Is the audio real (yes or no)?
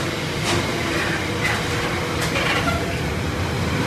yes